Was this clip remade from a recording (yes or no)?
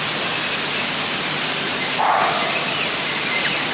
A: no